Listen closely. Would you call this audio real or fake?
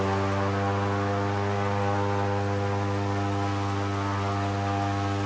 real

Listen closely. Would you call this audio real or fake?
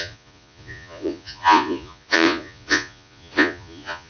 fake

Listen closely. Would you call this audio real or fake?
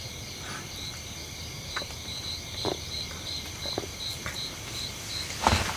real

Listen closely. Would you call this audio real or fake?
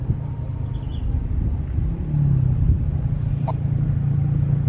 real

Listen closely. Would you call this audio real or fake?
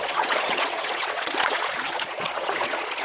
fake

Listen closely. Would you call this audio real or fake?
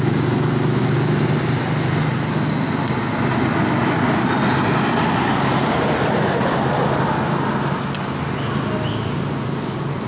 real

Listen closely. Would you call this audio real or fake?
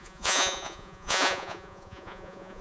fake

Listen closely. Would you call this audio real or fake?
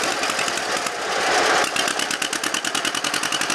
real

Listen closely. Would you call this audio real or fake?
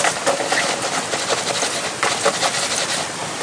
real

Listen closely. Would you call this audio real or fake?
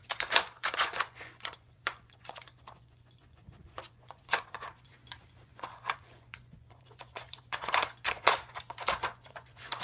fake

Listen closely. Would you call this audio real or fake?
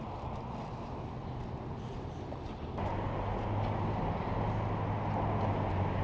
real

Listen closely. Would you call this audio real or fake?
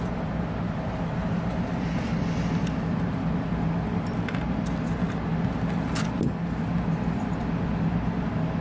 real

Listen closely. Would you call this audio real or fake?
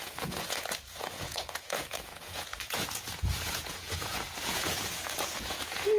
fake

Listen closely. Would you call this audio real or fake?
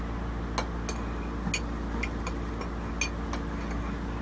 real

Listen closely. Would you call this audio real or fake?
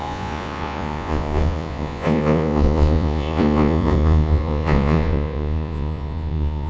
fake